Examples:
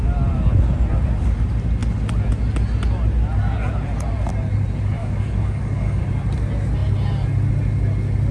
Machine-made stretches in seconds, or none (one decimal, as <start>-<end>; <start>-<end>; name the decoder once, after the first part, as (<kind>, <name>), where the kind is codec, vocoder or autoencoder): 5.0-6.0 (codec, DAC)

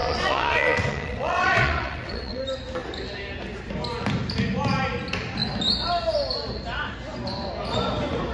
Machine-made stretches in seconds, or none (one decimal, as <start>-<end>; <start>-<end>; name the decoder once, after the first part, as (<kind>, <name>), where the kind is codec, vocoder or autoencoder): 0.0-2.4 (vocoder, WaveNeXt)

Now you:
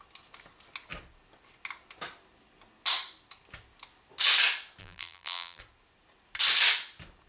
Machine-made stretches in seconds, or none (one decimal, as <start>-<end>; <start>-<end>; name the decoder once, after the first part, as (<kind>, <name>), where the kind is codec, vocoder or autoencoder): 4.8-5.6 (vocoder, BigVGAN v2)